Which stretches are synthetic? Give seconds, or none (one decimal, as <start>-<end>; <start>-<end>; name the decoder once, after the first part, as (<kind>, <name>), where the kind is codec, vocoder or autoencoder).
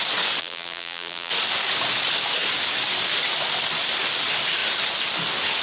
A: 0.4-1.3 (vocoder, BigVGAN v2)